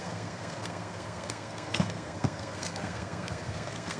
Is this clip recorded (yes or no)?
no